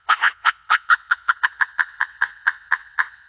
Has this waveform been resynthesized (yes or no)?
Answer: yes